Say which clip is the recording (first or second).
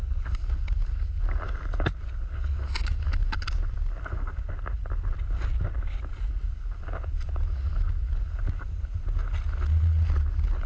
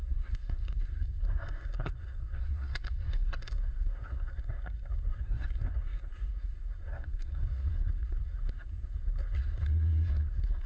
first